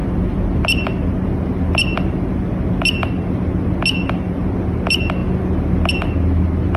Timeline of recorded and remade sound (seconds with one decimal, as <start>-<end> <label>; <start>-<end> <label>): 0.0-6.8 recorded